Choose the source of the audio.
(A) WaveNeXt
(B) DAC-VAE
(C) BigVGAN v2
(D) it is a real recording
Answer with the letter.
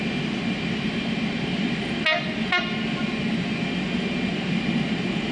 D